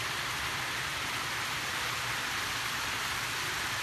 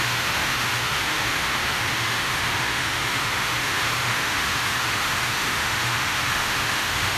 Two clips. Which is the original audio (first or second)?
first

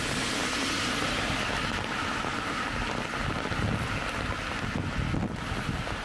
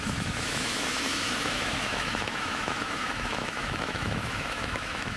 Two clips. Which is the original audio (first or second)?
first